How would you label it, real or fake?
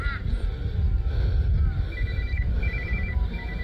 real